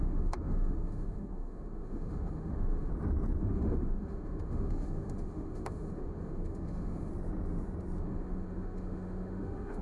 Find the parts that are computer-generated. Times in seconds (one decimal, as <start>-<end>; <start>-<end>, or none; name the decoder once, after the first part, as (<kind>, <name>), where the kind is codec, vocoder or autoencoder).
0.0-2.9 (autoencoder, DAC-VAE); 3.4-7.1; 8.0-9.8